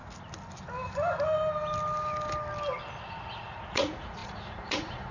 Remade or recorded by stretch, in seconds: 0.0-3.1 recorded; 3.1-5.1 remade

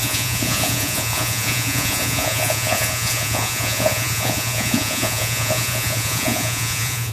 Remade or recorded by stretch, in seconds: 0.0-7.1 remade

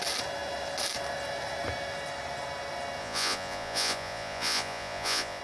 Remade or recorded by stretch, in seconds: 0.0-3.0 recorded; 3.0-5.4 remade